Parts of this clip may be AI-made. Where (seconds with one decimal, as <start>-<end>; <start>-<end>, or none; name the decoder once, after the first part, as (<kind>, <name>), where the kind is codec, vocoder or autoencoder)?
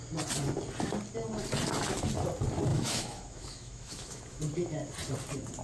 2.7-4.4 (autoencoder, DAC-VAE)